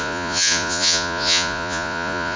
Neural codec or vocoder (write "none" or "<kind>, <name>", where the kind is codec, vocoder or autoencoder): vocoder, Vocos